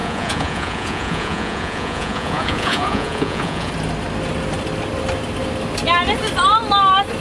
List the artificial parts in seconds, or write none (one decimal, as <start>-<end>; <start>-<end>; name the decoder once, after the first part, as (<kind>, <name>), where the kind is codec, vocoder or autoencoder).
0.0-3.7 (vocoder, Vocos)